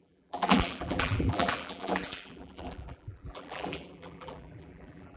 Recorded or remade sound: remade